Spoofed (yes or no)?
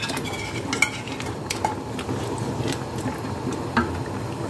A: no